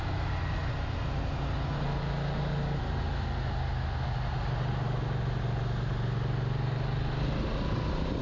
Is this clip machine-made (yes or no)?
no